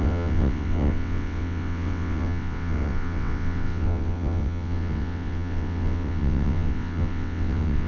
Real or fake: fake